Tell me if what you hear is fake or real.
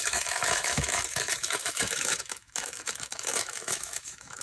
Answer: fake